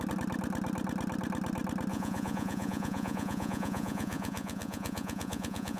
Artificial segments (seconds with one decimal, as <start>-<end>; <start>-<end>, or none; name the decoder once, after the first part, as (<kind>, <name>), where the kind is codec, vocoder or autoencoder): 1.9-5.8 (vocoder, Vocos)